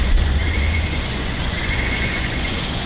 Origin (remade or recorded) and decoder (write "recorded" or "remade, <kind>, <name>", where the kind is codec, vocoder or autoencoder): remade, vocoder, Vocos